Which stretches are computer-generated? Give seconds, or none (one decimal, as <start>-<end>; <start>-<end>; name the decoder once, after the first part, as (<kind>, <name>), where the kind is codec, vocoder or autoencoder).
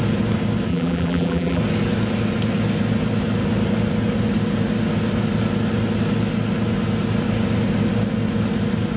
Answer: 0.7-1.6 (vocoder, BigVGAN v2)